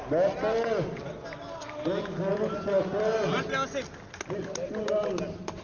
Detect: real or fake real